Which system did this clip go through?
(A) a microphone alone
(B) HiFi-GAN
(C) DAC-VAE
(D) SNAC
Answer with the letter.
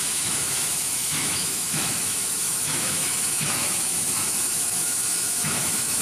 C